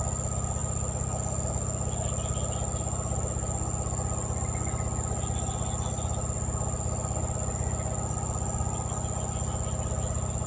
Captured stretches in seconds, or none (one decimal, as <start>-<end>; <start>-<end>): 0.0-10.5